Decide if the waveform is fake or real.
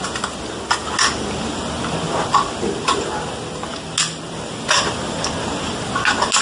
real